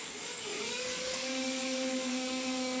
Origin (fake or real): fake